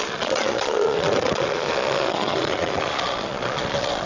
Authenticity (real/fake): fake